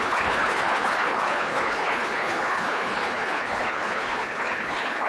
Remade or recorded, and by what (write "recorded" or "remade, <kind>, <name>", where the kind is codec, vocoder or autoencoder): remade, codec, HILCodec